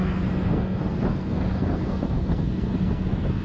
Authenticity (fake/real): fake